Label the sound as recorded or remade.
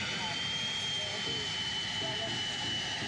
recorded